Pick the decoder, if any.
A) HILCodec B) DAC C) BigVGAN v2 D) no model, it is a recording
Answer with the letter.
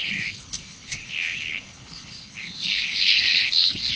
A